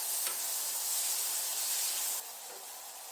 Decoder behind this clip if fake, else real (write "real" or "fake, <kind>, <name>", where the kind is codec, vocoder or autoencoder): real